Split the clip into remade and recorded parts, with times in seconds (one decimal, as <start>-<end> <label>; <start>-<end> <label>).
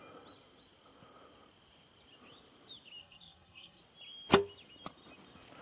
0.0-3.0 recorded; 3.0-3.8 remade; 3.8-5.6 recorded